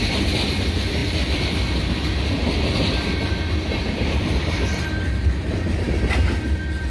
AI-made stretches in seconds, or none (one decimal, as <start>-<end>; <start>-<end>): none